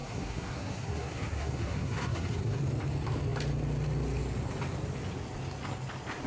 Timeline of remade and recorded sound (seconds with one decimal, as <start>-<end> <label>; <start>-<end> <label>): 0.0-2.6 remade; 2.6-6.3 recorded